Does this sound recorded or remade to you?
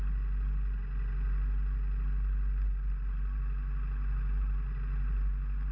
recorded